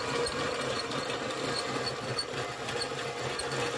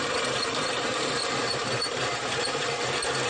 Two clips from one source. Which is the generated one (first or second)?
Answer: second